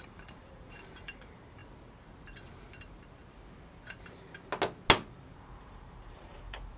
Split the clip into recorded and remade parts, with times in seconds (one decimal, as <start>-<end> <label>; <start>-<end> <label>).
0.0-1.6 remade; 1.6-5.1 recorded; 5.1-6.8 remade